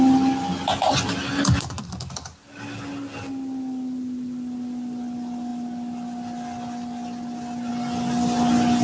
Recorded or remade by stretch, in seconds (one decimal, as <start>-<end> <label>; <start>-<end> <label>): 0.0-8.8 recorded